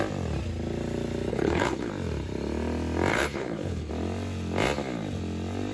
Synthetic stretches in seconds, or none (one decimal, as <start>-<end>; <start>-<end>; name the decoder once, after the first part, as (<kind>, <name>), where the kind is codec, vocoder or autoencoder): 1.3-1.9 (codec, HILCodec); 3.1-3.9